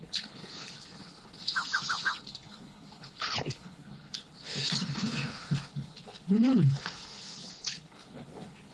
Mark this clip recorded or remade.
remade